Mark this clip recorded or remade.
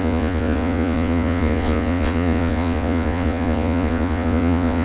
remade